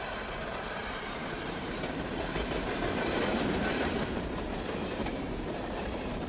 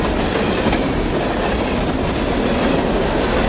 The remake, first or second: first